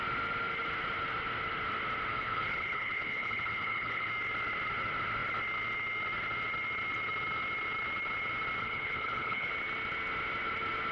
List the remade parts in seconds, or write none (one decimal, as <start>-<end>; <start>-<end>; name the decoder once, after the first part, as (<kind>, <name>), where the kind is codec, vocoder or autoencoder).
2.1-4.1 (codec, HILCodec); 8.6-9.5